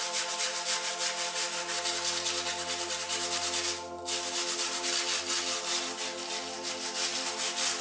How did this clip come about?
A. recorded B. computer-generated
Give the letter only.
A